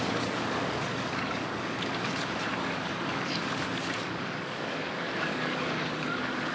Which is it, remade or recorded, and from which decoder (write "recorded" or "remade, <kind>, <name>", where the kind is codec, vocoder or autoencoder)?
remade, codec, DAC